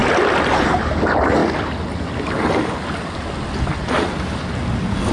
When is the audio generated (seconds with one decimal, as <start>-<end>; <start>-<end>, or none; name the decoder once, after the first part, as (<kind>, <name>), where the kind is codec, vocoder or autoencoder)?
none